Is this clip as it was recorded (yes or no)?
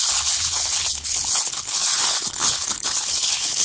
no